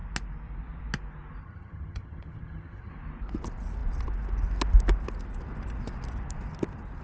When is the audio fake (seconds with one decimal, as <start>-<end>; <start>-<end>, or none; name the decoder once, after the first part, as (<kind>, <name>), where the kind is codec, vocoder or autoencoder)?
1.4-2.9 (vocoder, HiFi-GAN)